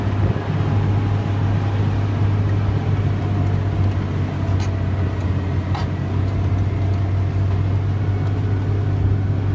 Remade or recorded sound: recorded